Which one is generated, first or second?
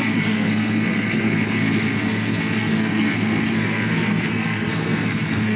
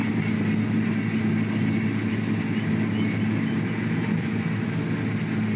first